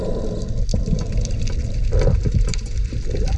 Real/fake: real